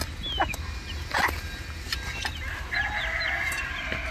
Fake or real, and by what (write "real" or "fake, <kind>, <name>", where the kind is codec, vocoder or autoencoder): real